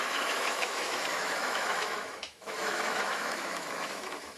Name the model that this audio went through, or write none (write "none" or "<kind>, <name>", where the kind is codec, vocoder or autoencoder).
autoencoder, DAC-VAE